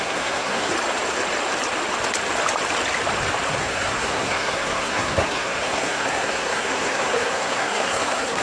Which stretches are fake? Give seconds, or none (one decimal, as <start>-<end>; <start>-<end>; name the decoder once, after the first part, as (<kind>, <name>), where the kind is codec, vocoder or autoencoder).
0.0-0.7 (codec, SNAC); 3.6-8.4